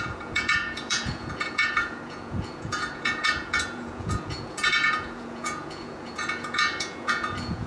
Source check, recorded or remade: remade